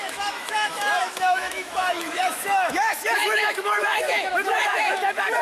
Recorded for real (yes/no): no